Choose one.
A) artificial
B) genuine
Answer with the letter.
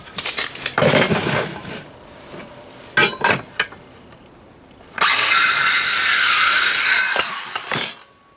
B